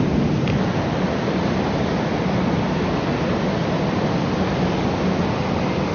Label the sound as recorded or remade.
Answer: recorded